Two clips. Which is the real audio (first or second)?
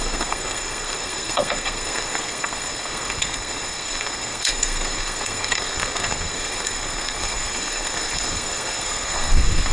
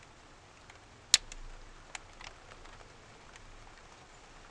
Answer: second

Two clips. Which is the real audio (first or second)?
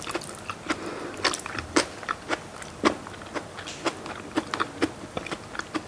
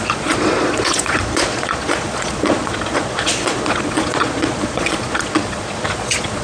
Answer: first